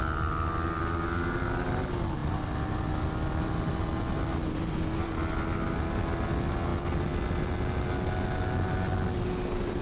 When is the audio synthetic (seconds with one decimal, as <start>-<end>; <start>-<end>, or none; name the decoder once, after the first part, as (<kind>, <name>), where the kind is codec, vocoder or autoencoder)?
none